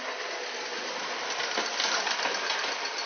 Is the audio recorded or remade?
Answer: recorded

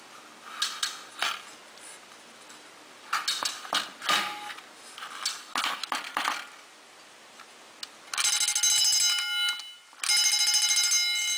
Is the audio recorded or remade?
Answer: recorded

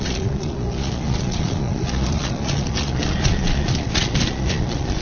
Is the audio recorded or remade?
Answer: remade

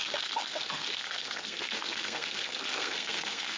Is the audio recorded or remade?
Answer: remade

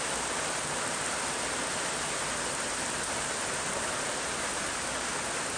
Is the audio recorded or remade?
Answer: recorded